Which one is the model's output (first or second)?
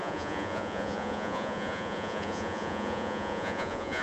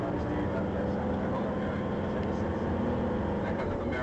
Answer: first